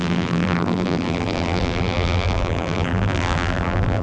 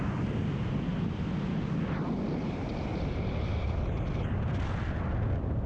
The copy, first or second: first